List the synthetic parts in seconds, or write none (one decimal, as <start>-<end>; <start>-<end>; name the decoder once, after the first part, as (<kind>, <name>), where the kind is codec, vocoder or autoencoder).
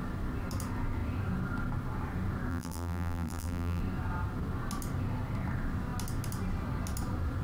2.5-3.8 (vocoder, BigVGAN v2)